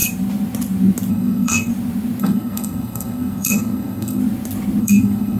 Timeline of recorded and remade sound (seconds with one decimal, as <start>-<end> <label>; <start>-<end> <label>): 0.0-1.1 recorded; 1.1-1.7 remade; 1.7-2.2 recorded; 2.2-4.2 remade; 4.2-4.8 recorded; 4.8-5.4 remade